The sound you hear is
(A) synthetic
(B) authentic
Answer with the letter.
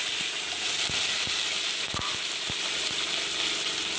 B